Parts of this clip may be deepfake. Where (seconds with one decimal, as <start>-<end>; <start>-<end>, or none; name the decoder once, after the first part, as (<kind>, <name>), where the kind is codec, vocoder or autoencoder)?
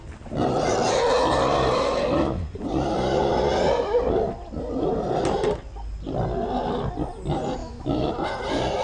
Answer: 7.6-8.1 (autoencoder, DAC-VAE)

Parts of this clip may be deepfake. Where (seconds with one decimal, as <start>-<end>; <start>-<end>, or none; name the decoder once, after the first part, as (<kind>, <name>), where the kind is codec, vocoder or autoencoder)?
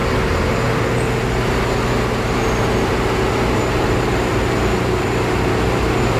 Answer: 3.7-4.7 (vocoder, BigVGAN v2); 5.8-6.2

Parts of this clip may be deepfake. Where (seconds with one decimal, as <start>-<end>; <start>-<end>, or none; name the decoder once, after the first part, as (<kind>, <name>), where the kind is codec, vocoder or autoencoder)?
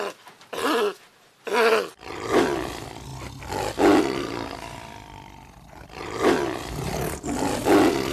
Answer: none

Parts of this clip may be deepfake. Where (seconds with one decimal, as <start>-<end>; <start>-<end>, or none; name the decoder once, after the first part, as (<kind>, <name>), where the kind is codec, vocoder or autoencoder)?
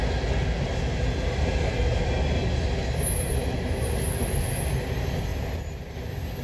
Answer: 5.3-5.9 (vocoder, BigVGAN v2)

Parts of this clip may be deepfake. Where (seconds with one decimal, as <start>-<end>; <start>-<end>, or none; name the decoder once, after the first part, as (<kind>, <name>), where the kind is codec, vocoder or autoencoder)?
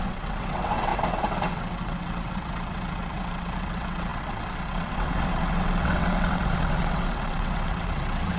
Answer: 0.0-8.4 (vocoder, WaveNeXt)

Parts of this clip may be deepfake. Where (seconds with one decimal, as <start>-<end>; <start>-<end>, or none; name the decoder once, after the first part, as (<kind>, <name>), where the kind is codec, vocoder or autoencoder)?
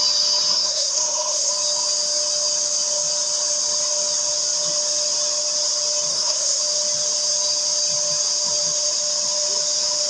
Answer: 0.5-1.5 (codec, SNAC); 6.1-6.6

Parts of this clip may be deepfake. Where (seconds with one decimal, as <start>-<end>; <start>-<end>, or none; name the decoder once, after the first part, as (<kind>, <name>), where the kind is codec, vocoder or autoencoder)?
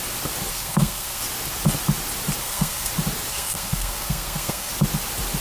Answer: 0.5-1.2 (codec, SNAC); 2.4-2.9; 3.3-4.7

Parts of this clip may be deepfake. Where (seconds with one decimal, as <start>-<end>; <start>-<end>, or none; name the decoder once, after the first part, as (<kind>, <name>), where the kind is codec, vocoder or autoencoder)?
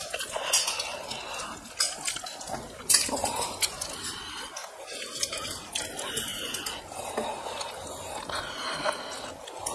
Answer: 4.6-5.7 (vocoder, BigVGAN v2)